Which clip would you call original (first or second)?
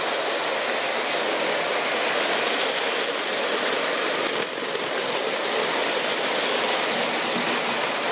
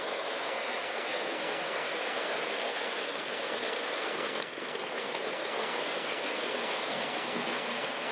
first